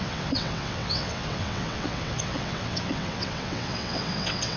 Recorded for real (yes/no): no